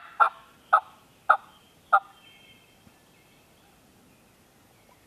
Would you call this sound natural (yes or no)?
yes